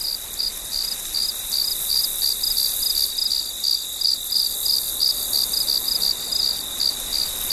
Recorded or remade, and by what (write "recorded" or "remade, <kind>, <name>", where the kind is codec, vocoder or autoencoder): recorded